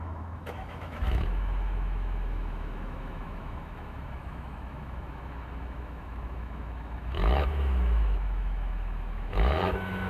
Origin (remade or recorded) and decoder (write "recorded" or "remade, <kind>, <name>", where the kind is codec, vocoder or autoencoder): remade, autoencoder, DAC-VAE